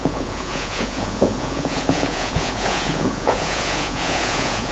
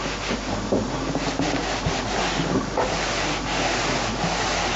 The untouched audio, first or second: second